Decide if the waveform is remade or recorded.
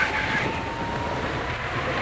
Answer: recorded